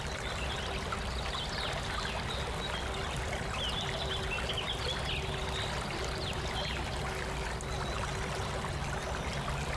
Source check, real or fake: real